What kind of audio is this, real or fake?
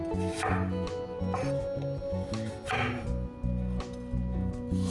real